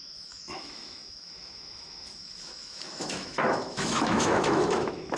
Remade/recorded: remade